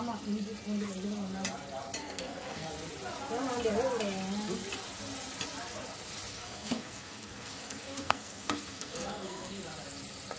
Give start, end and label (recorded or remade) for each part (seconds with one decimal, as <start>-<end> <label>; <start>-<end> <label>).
0.0-2.0 recorded; 2.0-2.7 remade; 2.7-6.3 recorded; 6.3-9.6 remade; 9.6-10.4 recorded